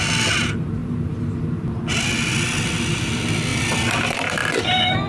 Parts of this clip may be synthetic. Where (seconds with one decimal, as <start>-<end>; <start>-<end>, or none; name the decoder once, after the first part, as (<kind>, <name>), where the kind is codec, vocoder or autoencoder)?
none